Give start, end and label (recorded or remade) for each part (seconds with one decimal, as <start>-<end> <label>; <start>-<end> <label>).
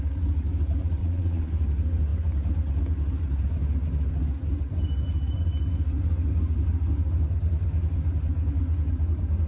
0.0-1.0 recorded; 1.0-1.5 remade; 1.5-9.5 recorded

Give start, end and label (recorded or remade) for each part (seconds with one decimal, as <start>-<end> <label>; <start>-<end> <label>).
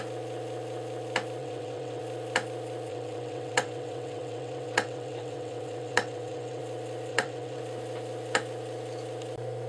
0.0-1.4 recorded; 1.4-2.0 remade; 2.0-2.9 recorded; 2.9-6.6 remade; 6.6-7.1 recorded; 7.1-7.6 remade; 7.6-9.7 recorded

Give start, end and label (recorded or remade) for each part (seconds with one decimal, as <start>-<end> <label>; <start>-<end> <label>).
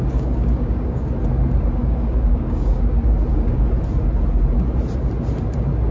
0.0-1.1 remade; 1.1-1.8 recorded; 1.8-2.9 remade; 2.9-3.3 recorded; 3.3-3.8 remade; 3.8-5.9 recorded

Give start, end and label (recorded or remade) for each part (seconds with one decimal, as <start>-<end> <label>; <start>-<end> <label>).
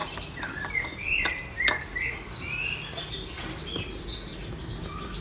0.0-2.6 remade; 2.6-5.2 recorded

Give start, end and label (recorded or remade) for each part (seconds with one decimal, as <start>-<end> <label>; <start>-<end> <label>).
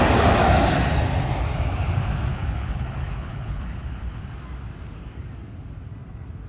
0.0-2.3 recorded; 2.3-4.3 remade; 4.3-6.5 recorded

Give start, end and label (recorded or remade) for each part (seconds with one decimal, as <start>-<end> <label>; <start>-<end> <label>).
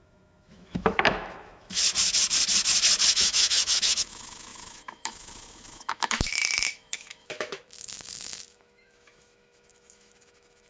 0.0-1.8 remade; 1.8-3.1 recorded; 3.1-10.7 remade